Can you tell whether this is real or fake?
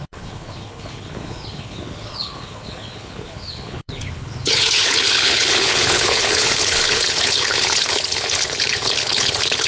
fake